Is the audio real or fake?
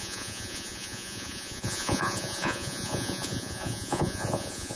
fake